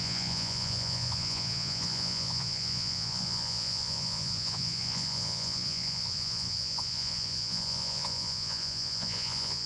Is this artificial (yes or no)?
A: yes